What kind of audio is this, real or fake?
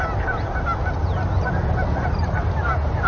real